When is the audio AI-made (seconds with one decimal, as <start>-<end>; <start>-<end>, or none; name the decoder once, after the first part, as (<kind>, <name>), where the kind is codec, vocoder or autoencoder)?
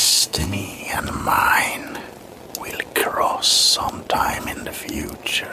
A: 0.0-0.8 (codec, SNAC)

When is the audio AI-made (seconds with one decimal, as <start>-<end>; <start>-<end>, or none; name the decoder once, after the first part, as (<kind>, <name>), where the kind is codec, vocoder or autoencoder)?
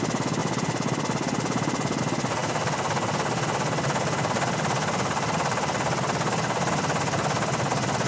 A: none